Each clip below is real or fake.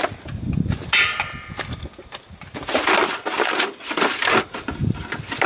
real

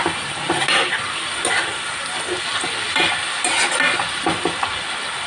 real